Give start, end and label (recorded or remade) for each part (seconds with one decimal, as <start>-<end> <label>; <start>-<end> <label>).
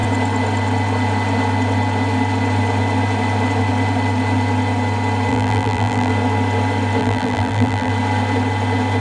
0.0-5.3 recorded; 5.3-6.1 remade; 6.1-7.0 recorded; 7.0-7.9 remade; 7.9-9.0 recorded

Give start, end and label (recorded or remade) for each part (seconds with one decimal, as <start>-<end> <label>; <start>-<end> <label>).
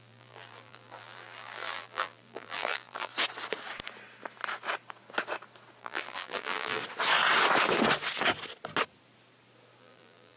0.0-3.1 remade; 3.1-5.8 recorded; 5.8-6.8 remade; 6.8-9.8 recorded; 9.8-10.4 remade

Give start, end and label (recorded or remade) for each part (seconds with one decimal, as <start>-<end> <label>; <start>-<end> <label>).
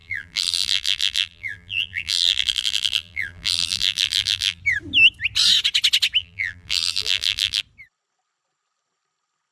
0.0-4.6 remade; 4.6-6.2 recorded; 6.2-7.6 remade; 7.6-9.5 recorded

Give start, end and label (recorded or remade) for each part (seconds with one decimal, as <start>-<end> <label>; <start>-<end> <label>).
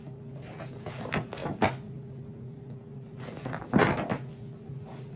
0.0-5.2 recorded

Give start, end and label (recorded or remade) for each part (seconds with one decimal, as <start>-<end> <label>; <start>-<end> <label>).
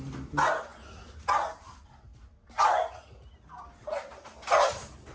0.0-0.7 recorded; 0.7-1.2 remade; 1.2-5.1 recorded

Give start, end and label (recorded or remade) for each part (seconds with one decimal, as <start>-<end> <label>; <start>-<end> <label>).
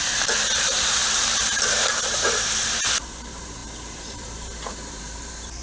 0.0-5.6 remade